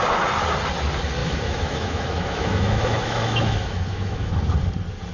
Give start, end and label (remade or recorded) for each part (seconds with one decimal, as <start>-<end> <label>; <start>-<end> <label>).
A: 0.0-1.2 recorded; 1.2-4.3 remade; 4.3-5.1 recorded